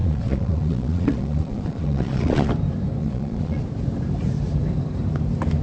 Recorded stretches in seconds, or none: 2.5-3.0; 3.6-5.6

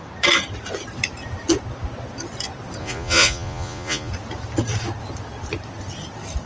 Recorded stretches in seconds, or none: 0.0-2.8; 4.1-6.5

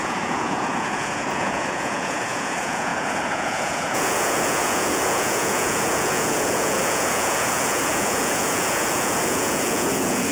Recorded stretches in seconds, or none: none

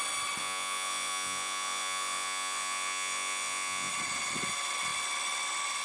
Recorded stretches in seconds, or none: 0.0-0.4; 3.9-5.8